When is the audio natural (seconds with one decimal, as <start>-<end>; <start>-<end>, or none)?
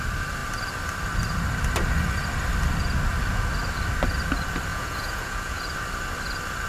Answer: 0.0-4.7; 5.6-6.7